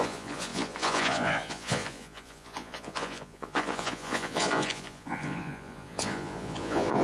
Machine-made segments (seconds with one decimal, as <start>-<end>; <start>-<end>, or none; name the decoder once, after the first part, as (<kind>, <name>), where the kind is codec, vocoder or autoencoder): 0.0-7.0 (vocoder, Vocos)